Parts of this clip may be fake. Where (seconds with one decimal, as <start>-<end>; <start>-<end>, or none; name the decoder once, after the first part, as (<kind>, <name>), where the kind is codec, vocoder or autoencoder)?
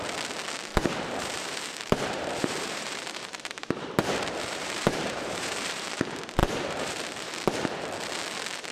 0.7-5.9 (vocoder, BigVGAN v2); 6.4-7.3